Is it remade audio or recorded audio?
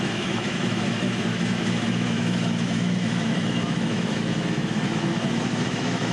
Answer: remade